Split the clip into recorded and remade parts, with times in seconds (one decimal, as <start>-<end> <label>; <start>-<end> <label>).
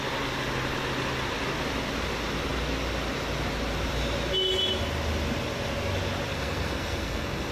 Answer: 0.0-6.3 recorded; 6.3-7.5 remade